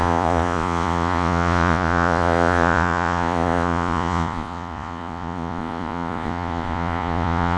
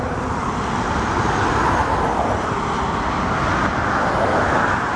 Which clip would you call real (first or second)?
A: second